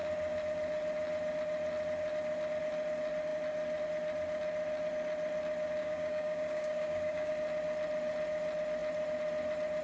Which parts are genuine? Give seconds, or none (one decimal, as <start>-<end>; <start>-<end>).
0.0-5.8; 7.3-9.8